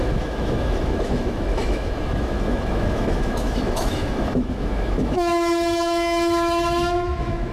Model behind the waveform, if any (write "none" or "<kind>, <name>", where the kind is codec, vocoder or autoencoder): autoencoder, DAC-VAE